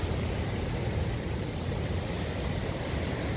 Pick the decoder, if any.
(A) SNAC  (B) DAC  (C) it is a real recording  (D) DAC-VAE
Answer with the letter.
C